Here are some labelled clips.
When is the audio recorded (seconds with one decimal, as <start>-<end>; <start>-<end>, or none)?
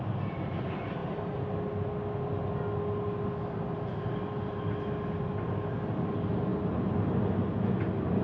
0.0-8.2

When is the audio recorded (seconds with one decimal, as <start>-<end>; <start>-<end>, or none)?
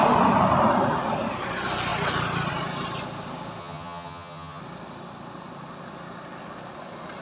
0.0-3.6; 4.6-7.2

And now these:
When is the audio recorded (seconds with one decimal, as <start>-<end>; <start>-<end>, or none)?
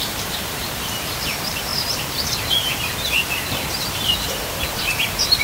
none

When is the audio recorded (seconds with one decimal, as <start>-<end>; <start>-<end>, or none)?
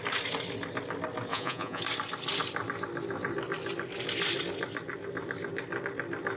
0.0-1.3; 1.8-6.4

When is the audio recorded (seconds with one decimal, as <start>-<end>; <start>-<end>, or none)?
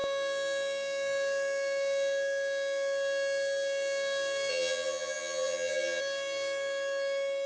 0.0-4.5; 6.0-7.5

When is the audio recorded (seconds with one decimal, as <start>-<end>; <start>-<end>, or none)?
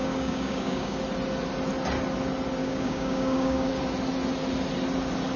1.0-2.6; 3.7-5.4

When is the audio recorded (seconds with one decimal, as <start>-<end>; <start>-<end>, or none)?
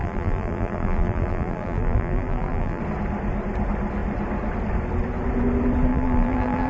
2.8-5.9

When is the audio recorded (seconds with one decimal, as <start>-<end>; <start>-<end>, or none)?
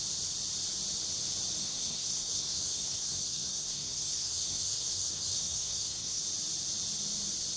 0.0-1.6; 6.2-7.6